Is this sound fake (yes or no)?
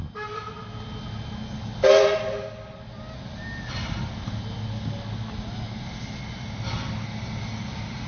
no